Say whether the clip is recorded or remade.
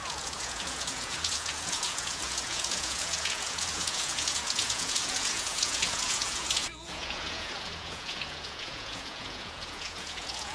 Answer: remade